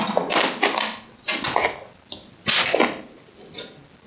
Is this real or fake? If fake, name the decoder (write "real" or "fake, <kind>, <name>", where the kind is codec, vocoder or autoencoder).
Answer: real